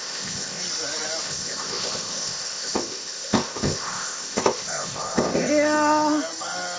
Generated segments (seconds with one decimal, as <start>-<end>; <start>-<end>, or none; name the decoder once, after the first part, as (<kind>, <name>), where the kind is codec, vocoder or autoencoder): 0.0-0.6 (codec, ZipCodec); 1.2-5.5